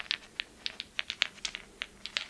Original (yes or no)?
yes